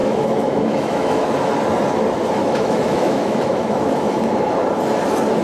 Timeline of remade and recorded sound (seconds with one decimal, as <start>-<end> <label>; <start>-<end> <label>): 0.0-1.3 remade; 1.3-2.4 recorded; 2.4-4.1 remade; 4.1-5.4 recorded